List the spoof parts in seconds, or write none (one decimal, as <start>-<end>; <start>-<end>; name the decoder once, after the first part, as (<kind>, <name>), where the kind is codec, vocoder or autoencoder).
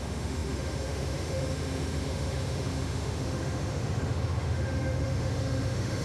0.0-6.0 (autoencoder, DAC-VAE)